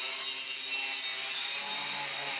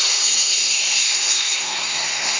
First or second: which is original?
first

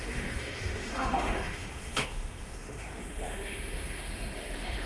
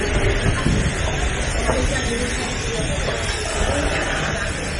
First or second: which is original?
second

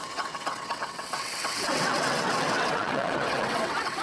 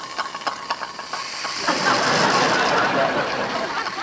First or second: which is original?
second